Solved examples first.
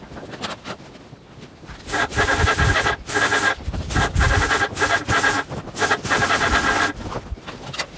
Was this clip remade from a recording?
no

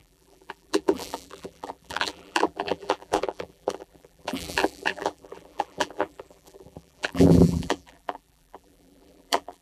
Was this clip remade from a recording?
yes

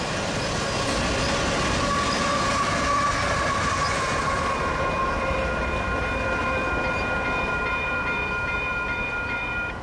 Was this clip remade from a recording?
yes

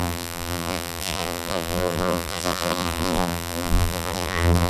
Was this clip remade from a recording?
yes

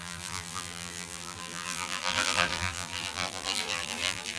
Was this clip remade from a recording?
yes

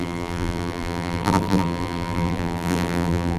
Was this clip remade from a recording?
yes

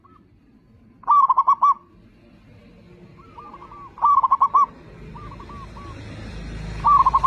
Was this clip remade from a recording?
no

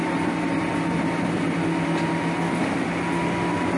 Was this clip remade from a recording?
no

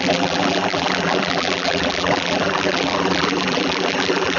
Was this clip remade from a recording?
yes